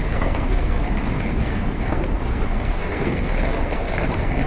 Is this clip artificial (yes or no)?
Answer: yes